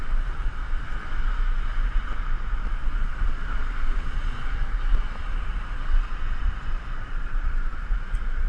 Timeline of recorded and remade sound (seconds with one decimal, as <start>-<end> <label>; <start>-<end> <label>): 0.0-0.9 remade; 0.9-3.1 recorded; 3.1-8.5 remade